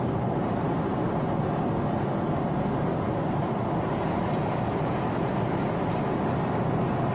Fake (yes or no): no